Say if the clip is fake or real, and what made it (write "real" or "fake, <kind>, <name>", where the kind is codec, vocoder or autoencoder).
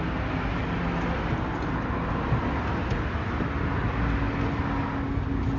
real